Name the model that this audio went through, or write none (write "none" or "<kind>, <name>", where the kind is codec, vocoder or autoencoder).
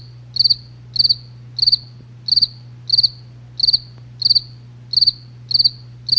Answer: none